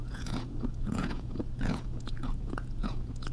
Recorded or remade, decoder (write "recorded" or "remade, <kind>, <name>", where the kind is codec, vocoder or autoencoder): remade, vocoder, Vocos